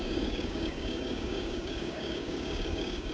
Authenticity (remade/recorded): remade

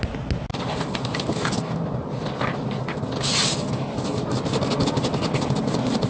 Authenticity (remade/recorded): recorded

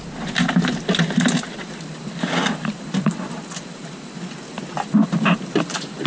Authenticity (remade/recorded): recorded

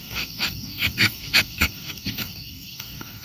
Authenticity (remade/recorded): remade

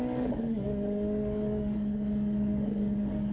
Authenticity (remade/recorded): remade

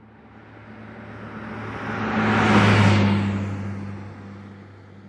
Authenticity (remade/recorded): recorded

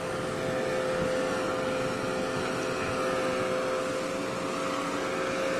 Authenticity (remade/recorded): recorded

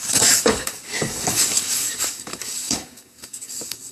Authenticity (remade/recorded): remade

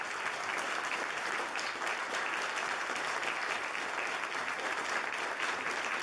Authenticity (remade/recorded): recorded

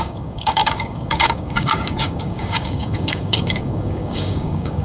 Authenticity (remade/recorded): remade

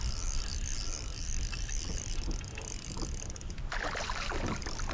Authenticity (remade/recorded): recorded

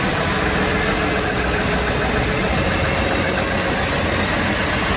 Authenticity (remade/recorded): recorded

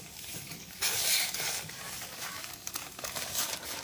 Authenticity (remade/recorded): remade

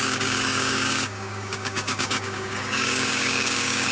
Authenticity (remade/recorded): remade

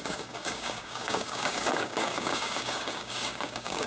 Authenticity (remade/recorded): remade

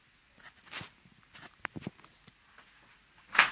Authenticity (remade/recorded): recorded